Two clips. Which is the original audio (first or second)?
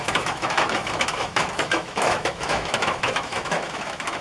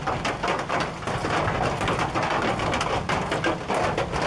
second